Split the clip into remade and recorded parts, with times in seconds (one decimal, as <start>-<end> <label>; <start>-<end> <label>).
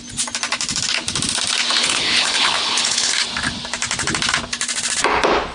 0.0-1.8 recorded; 1.8-3.1 remade; 3.1-5.5 recorded